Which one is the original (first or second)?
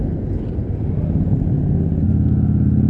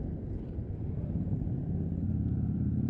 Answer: first